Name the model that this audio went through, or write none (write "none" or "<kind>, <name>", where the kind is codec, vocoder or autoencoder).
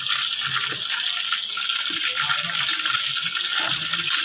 none